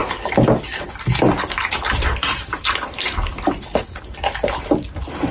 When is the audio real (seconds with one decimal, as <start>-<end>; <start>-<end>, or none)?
0.0-5.3